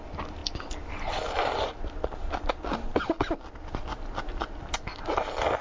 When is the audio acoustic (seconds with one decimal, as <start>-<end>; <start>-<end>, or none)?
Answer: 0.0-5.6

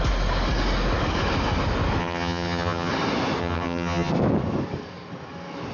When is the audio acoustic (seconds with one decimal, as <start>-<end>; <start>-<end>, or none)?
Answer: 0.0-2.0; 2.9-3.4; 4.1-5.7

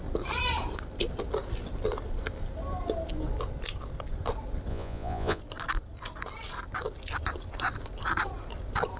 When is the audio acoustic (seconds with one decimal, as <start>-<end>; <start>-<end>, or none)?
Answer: 0.0-4.7; 5.4-9.0

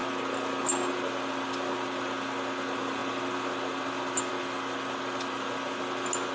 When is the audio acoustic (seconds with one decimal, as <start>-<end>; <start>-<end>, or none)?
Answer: 0.0-6.3

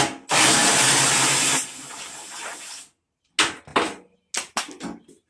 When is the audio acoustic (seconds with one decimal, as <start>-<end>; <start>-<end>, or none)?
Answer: 0.0-0.6; 2.8-5.3

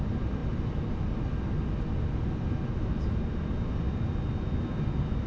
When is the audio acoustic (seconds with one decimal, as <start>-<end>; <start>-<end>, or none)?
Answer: 0.0-5.3